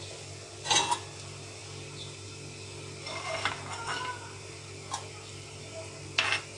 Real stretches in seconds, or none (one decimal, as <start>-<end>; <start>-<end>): 0.0-6.6